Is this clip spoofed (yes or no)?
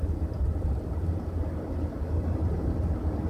no